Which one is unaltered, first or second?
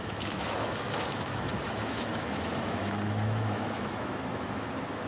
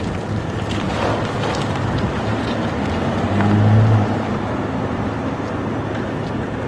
second